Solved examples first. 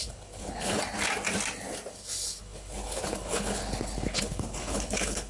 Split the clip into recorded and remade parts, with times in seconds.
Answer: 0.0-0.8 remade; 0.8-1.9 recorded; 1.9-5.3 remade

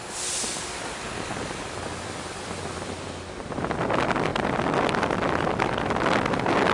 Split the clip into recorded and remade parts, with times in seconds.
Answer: 0.0-6.7 recorded

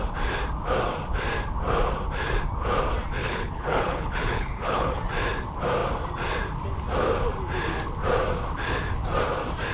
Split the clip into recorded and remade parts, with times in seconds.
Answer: 0.0-3.2 recorded; 3.2-5.0 remade; 5.0-9.7 recorded

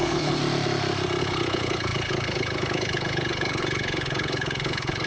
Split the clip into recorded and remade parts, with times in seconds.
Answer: 0.0-0.4 remade; 0.4-1.2 recorded; 1.2-5.1 remade

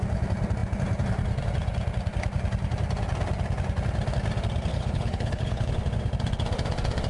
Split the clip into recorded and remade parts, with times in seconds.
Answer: 0.0-4.7 recorded; 4.7-5.7 remade; 5.7-7.1 recorded